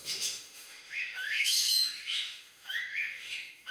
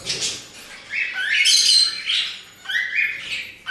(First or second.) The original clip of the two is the second